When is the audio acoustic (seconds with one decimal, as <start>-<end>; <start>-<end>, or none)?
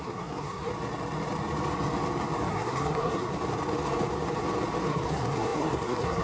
0.7-2.5; 3.3-4.9